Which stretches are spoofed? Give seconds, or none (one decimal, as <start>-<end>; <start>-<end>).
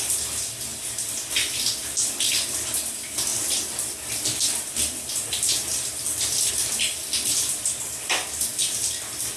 none